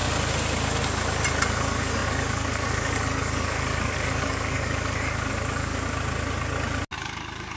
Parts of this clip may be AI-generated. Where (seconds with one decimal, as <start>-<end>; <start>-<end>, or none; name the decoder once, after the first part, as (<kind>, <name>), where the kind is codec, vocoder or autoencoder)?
1.5-5.7 (codec, DAC); 7.0-7.6